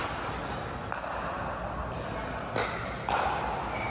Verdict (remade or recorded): recorded